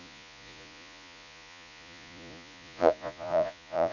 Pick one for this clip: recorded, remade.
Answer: remade